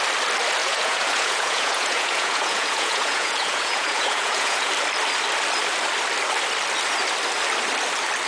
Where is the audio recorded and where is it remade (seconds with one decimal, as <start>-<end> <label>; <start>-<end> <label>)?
0.0-0.6 recorded; 0.6-4.7 remade; 4.7-8.3 recorded